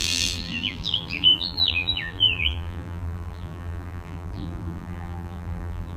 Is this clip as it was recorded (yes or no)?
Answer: no